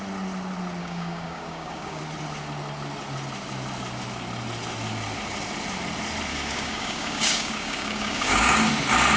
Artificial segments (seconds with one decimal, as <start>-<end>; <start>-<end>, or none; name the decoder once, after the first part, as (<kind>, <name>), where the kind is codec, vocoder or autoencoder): 0.8-2.0 (codec, DAC); 6.3-8.7